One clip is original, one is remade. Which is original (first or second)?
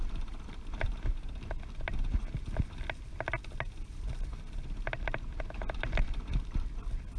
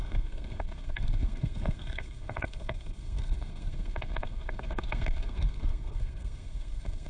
first